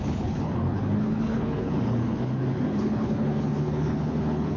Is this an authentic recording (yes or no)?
no